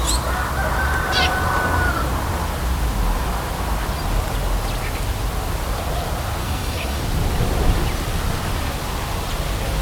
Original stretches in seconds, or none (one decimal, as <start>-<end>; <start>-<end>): 0.0-6.4; 7.0-9.8